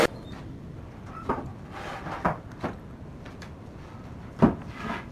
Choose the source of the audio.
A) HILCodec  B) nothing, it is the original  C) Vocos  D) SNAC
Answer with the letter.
B